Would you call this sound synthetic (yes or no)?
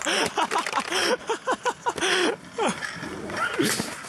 no